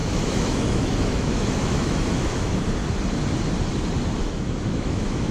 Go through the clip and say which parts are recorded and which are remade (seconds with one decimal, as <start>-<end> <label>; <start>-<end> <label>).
0.0-2.8 remade; 2.8-4.2 recorded; 4.2-5.3 remade